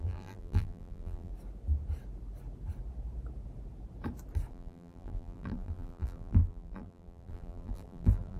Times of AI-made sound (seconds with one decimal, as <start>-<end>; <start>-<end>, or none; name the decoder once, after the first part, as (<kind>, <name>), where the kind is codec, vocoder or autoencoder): 0.0-1.3 (vocoder, BigVGAN v2); 4.5-8.4